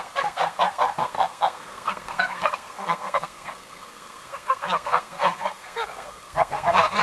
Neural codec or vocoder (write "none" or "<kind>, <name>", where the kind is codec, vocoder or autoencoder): codec, SNAC